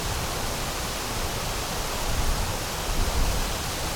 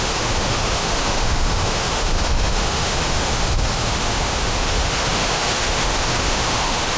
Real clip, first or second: first